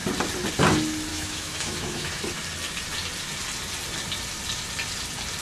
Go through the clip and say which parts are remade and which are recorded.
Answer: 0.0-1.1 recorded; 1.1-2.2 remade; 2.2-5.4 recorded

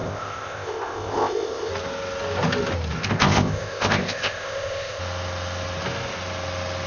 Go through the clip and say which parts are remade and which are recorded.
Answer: 0.0-1.7 remade; 1.7-3.0 recorded; 3.0-5.0 remade; 5.0-6.9 recorded

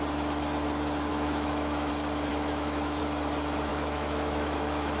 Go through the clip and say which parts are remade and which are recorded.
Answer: 0.0-1.1 recorded; 1.1-1.9 remade; 1.9-2.3 recorded; 2.3-3.0 remade; 3.0-3.7 recorded; 3.7-5.0 remade